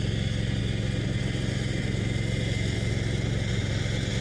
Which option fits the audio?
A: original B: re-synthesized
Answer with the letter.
A